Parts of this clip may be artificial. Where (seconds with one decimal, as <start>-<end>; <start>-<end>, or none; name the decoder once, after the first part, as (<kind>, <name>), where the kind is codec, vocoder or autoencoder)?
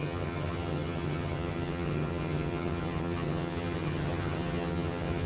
0.0-5.3 (vocoder, HiFi-GAN)